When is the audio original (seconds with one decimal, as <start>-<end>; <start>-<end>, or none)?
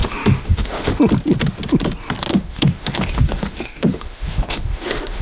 1.0-2.3